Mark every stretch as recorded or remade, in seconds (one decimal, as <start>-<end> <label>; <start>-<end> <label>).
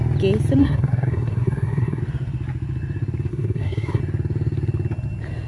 0.0-0.6 recorded; 0.6-2.0 remade; 2.0-3.3 recorded; 3.3-4.0 remade; 4.0-5.5 recorded